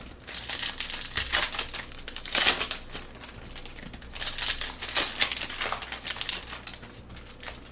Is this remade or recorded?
recorded